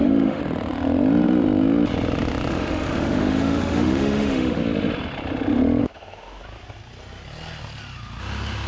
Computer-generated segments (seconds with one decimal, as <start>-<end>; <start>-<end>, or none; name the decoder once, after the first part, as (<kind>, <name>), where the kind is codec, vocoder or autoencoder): 0.0-0.4 (autoencoder, DAC-VAE); 2.5-4.6; 5.8-6.4; 8.2-8.7